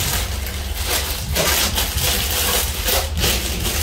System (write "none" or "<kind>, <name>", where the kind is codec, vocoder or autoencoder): none